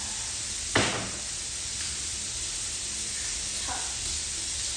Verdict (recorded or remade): recorded